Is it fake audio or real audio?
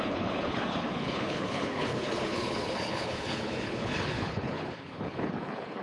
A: fake